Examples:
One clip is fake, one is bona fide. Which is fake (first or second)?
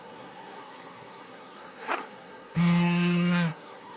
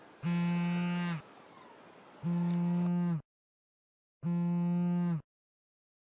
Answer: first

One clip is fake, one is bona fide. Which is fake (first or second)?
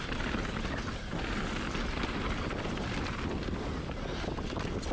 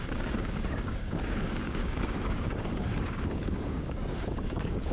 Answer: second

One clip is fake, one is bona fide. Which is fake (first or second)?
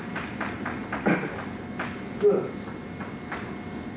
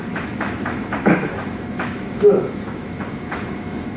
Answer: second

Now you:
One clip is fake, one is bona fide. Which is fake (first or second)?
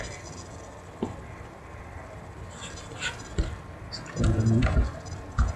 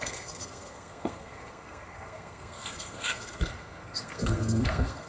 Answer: second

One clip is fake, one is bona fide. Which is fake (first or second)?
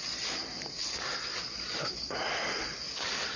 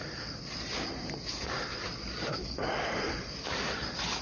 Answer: second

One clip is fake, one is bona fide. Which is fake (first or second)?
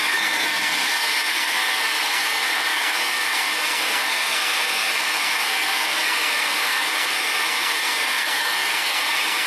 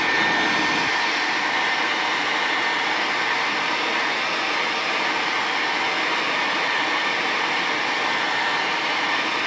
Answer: first